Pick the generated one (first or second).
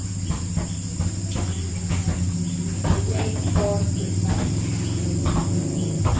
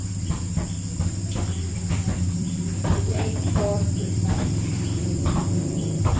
second